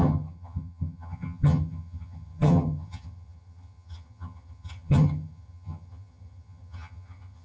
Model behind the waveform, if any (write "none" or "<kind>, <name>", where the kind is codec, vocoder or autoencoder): vocoder, HiFi-GAN